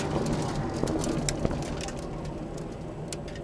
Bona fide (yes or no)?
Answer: yes